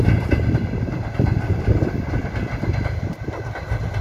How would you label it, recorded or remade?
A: recorded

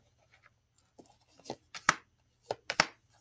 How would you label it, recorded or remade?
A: recorded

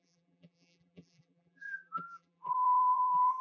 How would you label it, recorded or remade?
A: remade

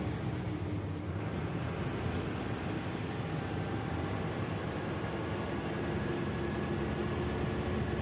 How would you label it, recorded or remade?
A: recorded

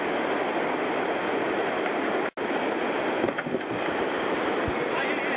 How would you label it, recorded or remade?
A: recorded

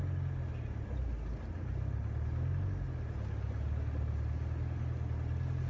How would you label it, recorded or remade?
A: recorded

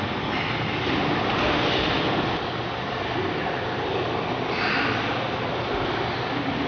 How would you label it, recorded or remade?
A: recorded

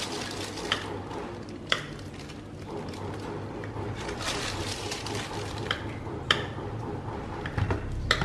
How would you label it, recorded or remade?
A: remade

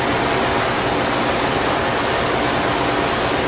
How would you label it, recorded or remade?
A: recorded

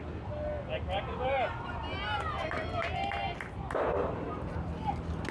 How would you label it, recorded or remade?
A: recorded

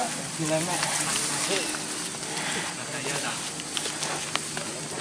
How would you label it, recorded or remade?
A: recorded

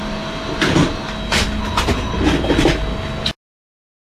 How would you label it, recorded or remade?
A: recorded